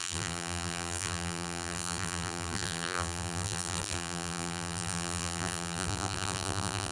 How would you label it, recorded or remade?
remade